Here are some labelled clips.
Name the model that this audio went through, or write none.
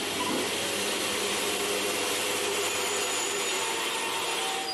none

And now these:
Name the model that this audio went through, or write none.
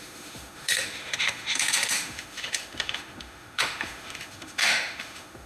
autoencoder, DAC-VAE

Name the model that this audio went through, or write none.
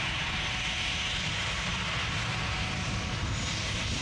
none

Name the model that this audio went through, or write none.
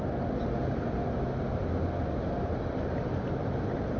none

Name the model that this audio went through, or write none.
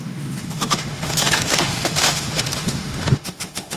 autoencoder, DAC-VAE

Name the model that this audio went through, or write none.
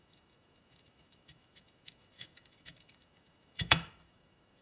autoencoder, DAC-VAE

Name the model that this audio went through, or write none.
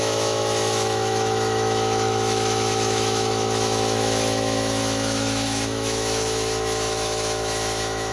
autoencoder, DAC-VAE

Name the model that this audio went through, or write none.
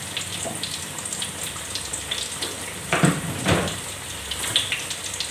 none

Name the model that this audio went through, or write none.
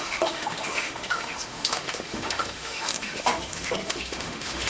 autoencoder, DAC-VAE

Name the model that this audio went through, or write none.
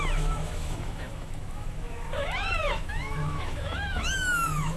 autoencoder, DAC-VAE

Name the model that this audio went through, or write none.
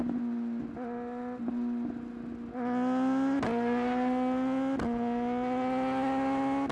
none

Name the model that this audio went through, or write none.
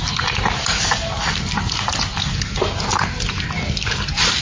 none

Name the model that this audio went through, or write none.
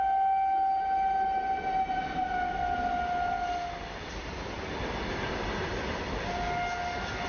none